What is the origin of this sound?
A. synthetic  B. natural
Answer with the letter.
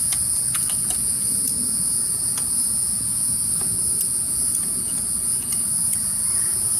A